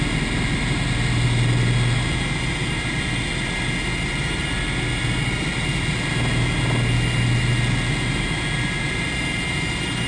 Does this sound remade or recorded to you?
recorded